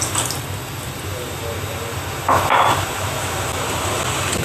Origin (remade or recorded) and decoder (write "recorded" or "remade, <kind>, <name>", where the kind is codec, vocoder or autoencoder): recorded